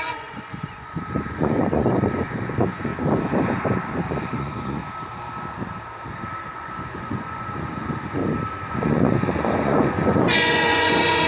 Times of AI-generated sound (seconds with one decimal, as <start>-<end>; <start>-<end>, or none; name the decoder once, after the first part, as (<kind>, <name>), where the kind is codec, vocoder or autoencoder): 0.0-2.9 (vocoder, Vocos); 4.1-4.8; 6.5-8.2; 8.7-11.3